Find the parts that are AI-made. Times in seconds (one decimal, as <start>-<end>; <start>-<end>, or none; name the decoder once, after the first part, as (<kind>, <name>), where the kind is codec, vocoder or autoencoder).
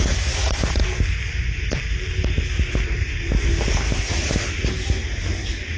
none